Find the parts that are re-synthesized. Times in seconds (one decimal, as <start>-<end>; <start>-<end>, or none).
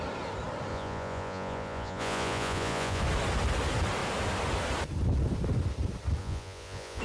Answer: 0.7-3.0; 6.2-7.0